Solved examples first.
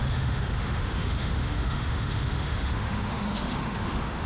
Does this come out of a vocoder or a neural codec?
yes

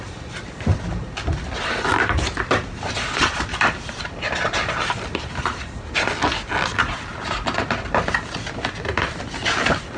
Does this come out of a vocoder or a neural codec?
no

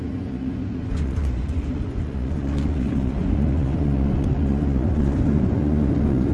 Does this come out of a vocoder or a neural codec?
yes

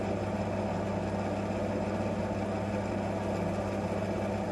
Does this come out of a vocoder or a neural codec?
no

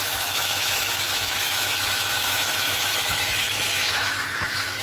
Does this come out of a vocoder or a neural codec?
yes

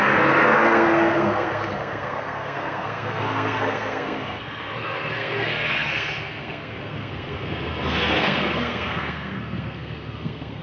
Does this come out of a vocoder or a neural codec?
yes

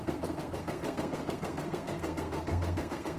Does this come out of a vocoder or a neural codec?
yes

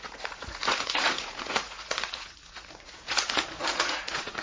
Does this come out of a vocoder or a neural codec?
yes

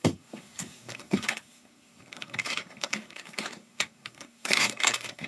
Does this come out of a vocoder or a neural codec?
yes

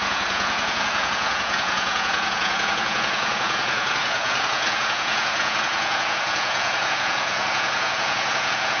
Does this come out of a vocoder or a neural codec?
yes